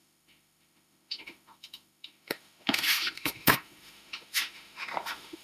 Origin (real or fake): fake